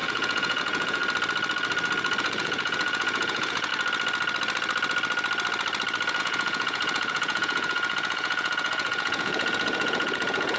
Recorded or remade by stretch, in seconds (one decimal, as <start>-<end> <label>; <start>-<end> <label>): 0.0-1.0 remade; 1.0-2.2 recorded; 2.2-3.7 remade; 3.7-6.2 recorded; 6.2-10.6 remade

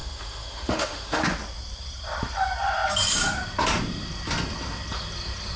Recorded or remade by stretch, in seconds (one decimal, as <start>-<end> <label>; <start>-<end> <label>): 0.0-1.2 remade; 1.2-5.6 recorded

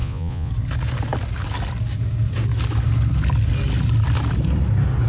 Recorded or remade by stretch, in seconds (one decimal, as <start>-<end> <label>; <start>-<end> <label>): 0.0-0.5 remade; 0.5-5.1 recorded